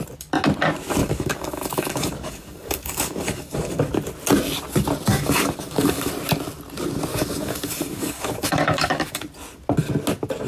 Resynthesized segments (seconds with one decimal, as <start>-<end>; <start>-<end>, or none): 1.0-3.9; 5.1-6.1; 7.1-9.2